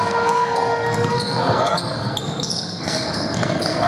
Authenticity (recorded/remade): remade